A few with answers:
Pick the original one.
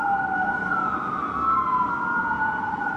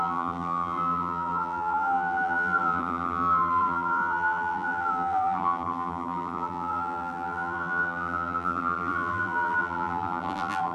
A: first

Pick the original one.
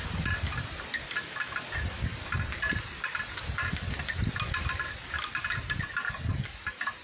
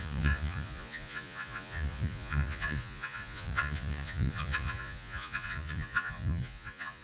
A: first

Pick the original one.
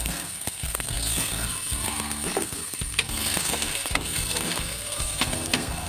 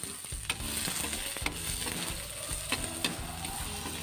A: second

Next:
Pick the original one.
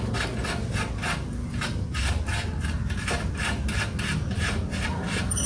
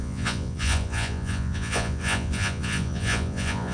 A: first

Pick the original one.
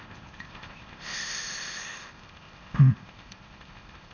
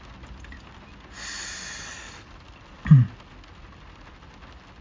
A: second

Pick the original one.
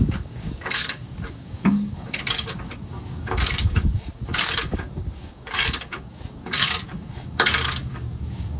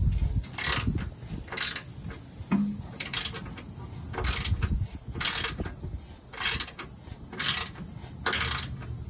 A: second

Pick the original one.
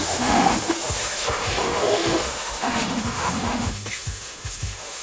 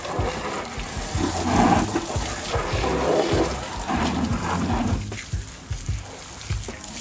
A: second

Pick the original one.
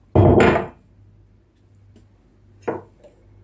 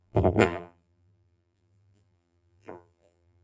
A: first